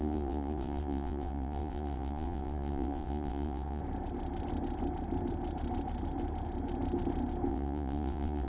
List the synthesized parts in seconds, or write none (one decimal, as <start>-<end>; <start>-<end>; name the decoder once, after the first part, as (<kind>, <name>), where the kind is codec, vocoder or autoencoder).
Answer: 0.0-3.8 (vocoder, WaveNeXt); 7.5-8.5